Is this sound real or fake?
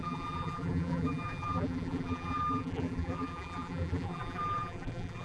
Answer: fake